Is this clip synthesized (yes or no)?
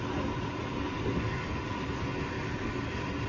no